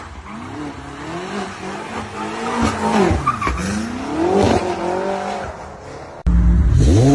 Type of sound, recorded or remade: recorded